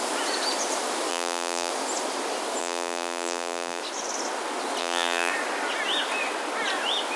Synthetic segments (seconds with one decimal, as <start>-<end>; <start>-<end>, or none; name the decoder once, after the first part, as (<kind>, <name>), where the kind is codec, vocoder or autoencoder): 1.1-1.7 (vocoder, BigVGAN v2); 2.6-3.8; 4.8-5.3